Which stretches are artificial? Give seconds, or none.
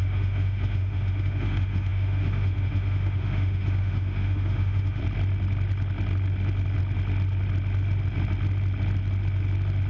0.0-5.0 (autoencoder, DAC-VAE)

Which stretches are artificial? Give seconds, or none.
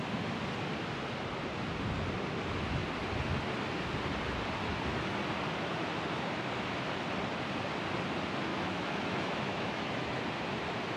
8.5-10.2 (autoencoder, DAC-VAE)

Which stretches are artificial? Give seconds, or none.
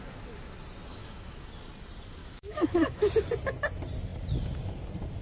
1.0-1.5 (autoencoder, DAC-VAE); 2.2-3.1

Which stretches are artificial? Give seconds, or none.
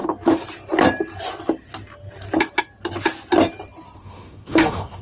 4.0-5.0 (autoencoder, DAC-VAE)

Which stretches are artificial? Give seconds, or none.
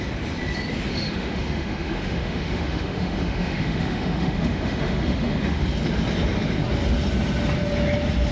0.9-5.6 (autoencoder, DAC-VAE)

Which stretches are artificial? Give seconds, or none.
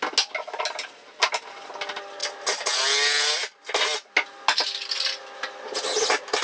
none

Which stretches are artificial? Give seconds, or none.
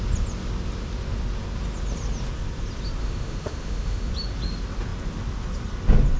3.0-4.1 (autoencoder, DAC-VAE)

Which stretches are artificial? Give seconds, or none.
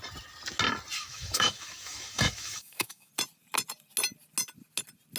1.0-3.1 (autoencoder, DAC-VAE)